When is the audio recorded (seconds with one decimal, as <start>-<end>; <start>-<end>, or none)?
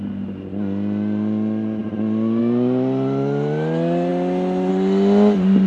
0.0-5.7